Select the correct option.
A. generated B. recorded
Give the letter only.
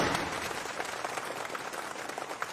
B